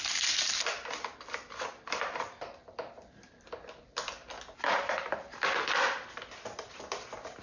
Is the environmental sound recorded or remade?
remade